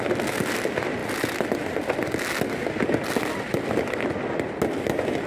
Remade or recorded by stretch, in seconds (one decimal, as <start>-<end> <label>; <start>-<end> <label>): 0.0-5.3 recorded